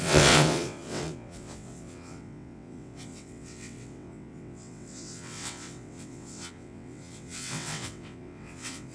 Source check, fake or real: fake